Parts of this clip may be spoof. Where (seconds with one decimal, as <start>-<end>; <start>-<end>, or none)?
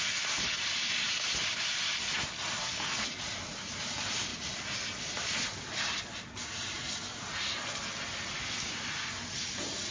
2.6-3.1